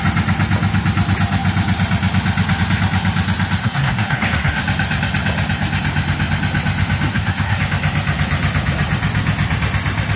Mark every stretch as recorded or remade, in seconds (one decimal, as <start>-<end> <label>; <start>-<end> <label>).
0.0-3.6 recorded; 3.6-4.6 remade; 4.6-7.1 recorded; 7.1-7.6 remade; 7.6-10.2 recorded